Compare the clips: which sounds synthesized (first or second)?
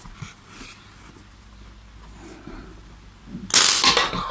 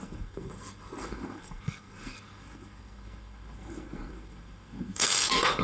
second